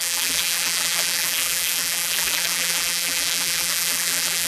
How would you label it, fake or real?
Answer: fake